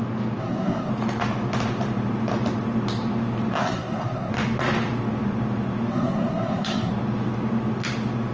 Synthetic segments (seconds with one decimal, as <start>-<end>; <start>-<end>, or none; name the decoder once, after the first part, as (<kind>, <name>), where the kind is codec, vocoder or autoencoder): 0.4-0.9 (codec, SNAC); 3.6-4.3; 5.9-6.9